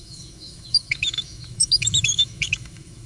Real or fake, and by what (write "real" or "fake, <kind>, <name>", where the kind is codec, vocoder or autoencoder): fake, autoencoder, DAC-VAE